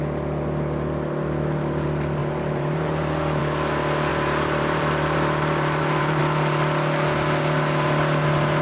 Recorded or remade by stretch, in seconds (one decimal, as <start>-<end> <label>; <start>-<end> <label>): 0.0-2.2 recorded; 2.2-3.4 remade; 3.4-4.1 recorded; 4.1-6.2 remade; 6.2-8.6 recorded

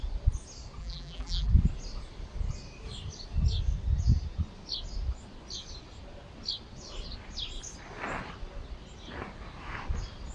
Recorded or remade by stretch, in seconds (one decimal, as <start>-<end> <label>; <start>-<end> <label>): 0.0-0.8 recorded; 0.8-1.5 remade; 1.5-10.3 recorded

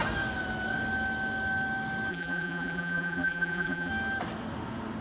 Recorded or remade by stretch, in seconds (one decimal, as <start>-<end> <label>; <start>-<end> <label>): 0.0-2.1 recorded; 2.1-3.9 remade; 3.9-5.0 recorded

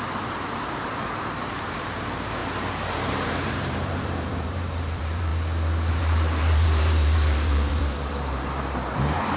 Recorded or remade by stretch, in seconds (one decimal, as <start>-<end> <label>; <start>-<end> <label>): 0.0-2.4 remade; 2.4-2.9 recorded; 2.9-5.3 remade; 5.3-5.9 recorded; 5.9-9.4 remade

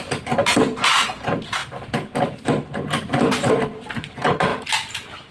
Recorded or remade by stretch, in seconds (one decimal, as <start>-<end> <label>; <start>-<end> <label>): 0.0-1.6 remade; 1.6-2.2 recorded; 2.2-5.3 remade